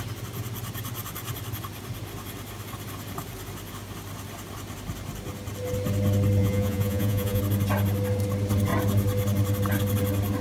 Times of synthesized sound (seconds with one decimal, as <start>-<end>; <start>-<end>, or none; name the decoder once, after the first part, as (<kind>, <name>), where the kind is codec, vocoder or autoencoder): 6.4-7.4 (vocoder, Vocos)